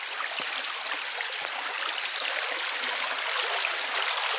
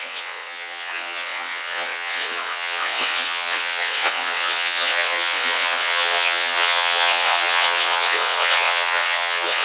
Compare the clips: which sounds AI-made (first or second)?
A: second